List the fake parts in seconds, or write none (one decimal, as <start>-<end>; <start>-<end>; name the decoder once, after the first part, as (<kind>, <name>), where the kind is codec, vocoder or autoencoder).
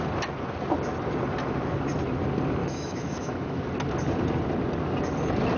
2.6-3.6 (autoencoder, DAC-VAE)